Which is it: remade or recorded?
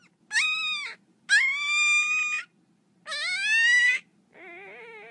recorded